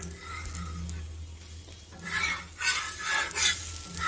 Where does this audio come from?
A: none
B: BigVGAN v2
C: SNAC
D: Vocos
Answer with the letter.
A